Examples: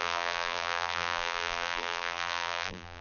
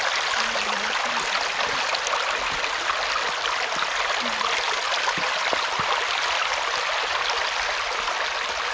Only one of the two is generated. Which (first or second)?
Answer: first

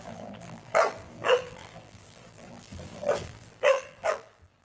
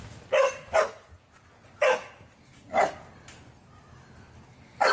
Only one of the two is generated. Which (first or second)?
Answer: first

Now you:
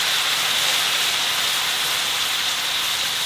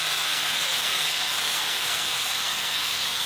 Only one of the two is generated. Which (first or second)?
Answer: second